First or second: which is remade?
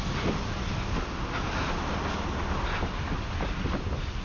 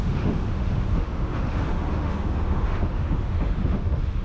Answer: second